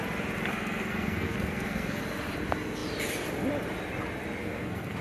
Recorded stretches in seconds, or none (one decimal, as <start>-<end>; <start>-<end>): 0.0-0.5; 2.0-4.4